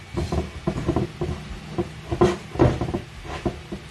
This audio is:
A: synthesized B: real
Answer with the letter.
B